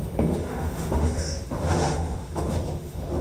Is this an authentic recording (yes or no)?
no